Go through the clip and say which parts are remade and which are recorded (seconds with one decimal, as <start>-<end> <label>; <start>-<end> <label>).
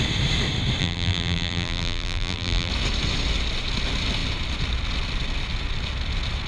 0.0-0.8 recorded; 0.8-2.7 remade; 2.7-6.5 recorded